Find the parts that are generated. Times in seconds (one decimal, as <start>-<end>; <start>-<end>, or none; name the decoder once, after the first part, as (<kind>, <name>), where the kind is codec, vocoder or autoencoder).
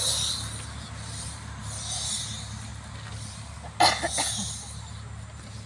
none